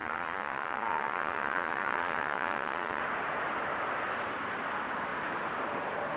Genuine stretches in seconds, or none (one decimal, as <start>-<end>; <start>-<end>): 3.0-6.2